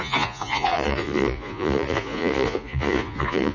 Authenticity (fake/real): fake